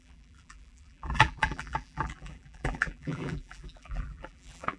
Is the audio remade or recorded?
remade